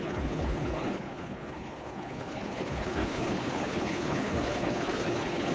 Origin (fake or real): fake